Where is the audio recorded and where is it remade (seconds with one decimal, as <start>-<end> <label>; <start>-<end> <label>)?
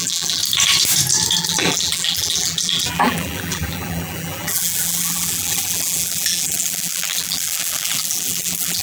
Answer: 0.0-0.4 remade; 0.4-1.4 recorded; 1.4-8.8 remade